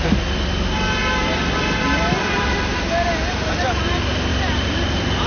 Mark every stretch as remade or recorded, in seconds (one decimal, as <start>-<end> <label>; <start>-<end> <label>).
0.0-1.0 recorded; 1.0-2.4 remade; 2.4-4.3 recorded; 4.3-5.3 remade